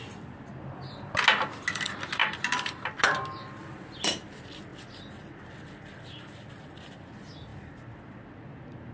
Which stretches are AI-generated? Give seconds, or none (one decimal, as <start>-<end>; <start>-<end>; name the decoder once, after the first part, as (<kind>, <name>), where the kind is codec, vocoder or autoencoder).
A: 2.2-4.3 (vocoder, BigVGAN v2); 7.5-8.9